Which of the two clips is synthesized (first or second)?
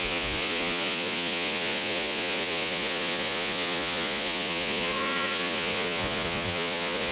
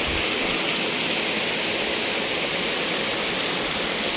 first